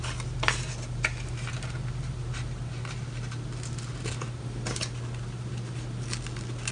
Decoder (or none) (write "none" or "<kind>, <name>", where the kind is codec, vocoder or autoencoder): none